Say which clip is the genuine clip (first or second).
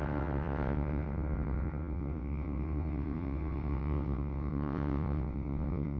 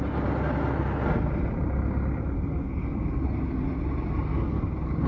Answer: second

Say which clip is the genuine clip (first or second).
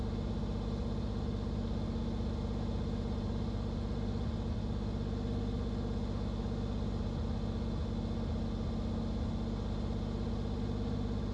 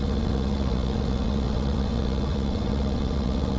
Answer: first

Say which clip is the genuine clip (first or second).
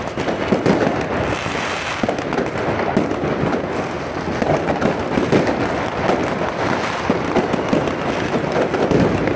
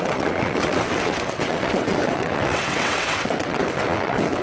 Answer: first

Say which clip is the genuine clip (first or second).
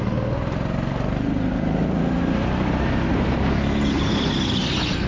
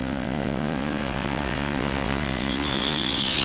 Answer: first